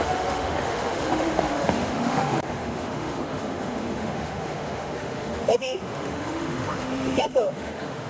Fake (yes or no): yes